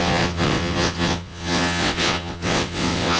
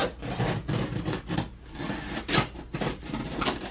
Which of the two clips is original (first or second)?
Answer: second